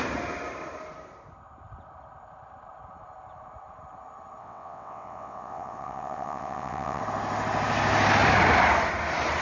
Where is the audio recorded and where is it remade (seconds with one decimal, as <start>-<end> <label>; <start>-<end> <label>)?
0.0-4.4 recorded; 4.4-7.0 remade; 7.0-9.4 recorded